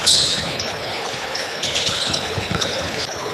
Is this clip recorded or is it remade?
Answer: remade